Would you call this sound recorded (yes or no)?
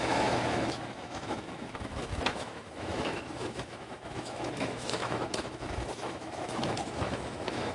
no